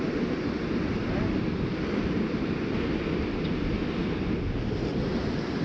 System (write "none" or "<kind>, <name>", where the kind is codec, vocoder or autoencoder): none